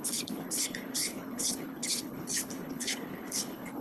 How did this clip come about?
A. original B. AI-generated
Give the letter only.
B